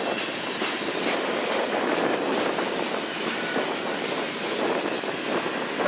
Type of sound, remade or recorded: recorded